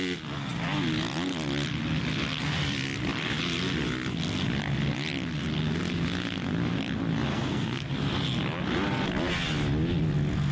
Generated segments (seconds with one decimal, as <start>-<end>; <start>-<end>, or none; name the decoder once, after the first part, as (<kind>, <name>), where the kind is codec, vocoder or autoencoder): 7.3-7.9 (codec, SNAC)